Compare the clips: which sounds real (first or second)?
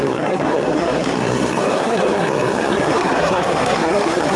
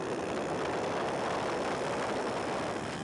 second